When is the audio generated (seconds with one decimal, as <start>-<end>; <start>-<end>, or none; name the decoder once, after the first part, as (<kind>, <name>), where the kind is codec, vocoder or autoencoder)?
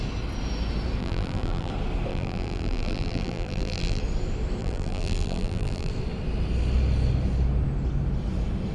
1.0-1.7 (vocoder, BigVGAN v2); 2.1-4.0; 4.6-5.9